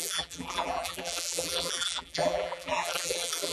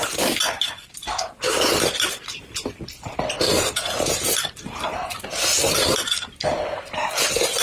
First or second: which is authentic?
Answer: second